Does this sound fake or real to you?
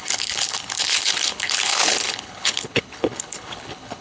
fake